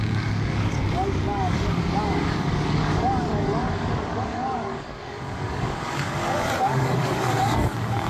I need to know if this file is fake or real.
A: fake